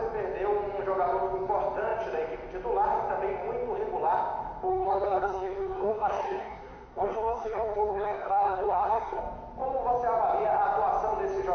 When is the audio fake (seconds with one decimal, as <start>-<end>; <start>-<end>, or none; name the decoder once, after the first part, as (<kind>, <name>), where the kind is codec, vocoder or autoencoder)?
4.7-9.2 (codec, SNAC)